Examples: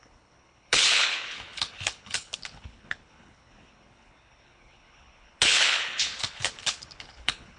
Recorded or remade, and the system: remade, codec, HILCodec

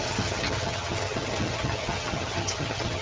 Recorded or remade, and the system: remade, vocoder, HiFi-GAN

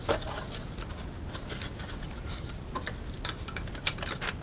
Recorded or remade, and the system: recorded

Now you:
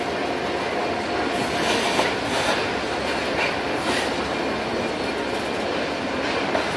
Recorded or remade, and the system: recorded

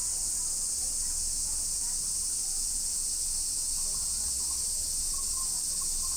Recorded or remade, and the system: recorded